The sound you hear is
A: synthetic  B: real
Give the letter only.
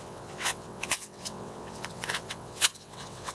A